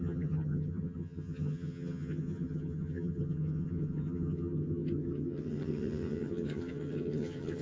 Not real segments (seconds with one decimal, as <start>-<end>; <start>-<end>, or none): 0.0-7.6